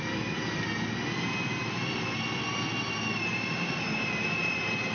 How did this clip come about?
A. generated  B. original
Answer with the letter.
B